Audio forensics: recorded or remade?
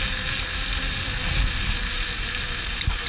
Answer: recorded